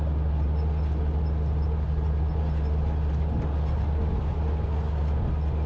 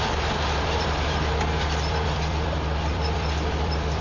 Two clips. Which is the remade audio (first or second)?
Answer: second